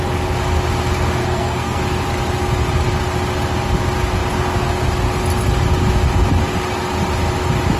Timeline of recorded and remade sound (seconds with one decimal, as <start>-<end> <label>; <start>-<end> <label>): 0.0-1.2 recorded; 1.2-1.8 remade; 1.8-7.8 recorded